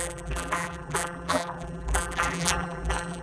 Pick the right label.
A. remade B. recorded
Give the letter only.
A